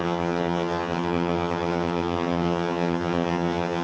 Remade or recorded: remade